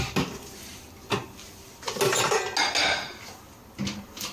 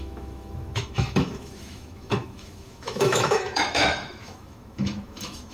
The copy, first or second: second